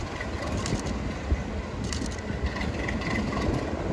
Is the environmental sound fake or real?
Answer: real